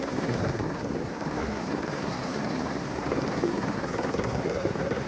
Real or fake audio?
fake